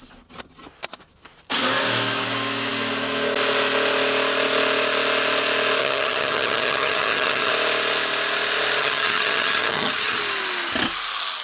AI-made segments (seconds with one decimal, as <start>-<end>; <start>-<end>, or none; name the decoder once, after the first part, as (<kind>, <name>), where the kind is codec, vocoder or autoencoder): 5.8-7.5 (vocoder, HiFi-GAN); 8.8-10.2